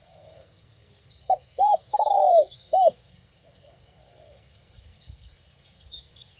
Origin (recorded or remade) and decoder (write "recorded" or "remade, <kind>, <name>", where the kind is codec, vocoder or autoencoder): remade, codec, SNAC